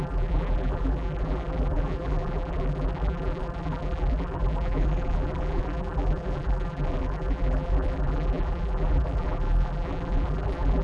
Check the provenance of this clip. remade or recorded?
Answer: remade